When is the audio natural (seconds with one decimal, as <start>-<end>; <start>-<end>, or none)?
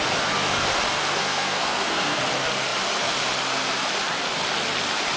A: 0.0-1.2; 2.2-5.2